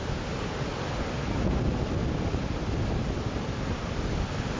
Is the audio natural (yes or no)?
yes